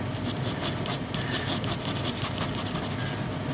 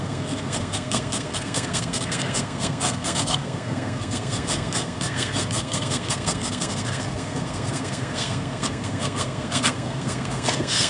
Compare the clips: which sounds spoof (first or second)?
second